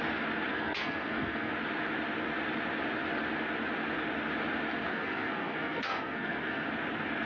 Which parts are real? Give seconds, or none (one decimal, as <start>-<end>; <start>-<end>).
0.0-0.5; 1.5-4.9; 6.7-7.3